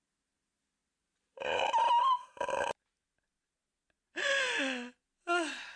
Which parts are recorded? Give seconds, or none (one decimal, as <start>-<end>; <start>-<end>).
0.0-5.8